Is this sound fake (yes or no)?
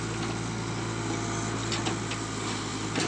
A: no